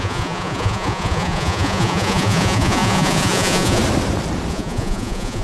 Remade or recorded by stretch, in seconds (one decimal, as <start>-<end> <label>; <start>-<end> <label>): 0.0-3.8 remade; 3.8-4.5 recorded; 4.5-5.4 remade